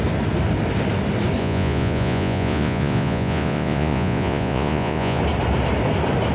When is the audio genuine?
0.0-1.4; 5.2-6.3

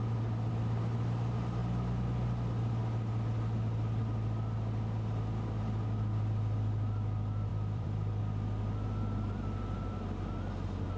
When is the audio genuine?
0.0-7.5; 8.2-11.0

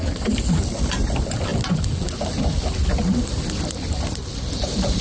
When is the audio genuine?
0.0-5.0

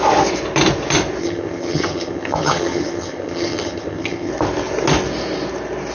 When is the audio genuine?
0.0-1.2; 4.3-5.9

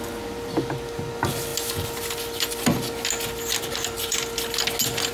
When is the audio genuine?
0.0-5.1

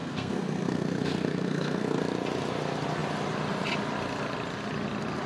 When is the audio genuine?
2.0-5.3

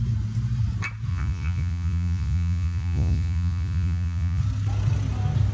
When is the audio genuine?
0.0-1.1; 4.4-5.5

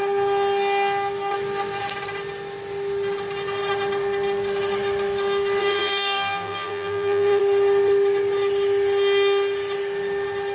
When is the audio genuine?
0.0-5.6; 7.4-10.5